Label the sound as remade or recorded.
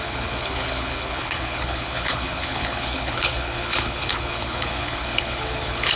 remade